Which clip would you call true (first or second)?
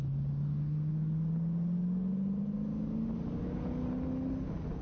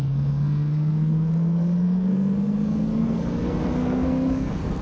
first